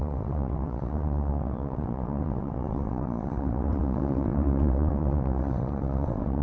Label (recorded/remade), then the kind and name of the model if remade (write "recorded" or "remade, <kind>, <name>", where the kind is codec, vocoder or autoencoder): remade, vocoder, WaveNeXt